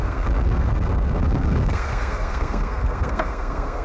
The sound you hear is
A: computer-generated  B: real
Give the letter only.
A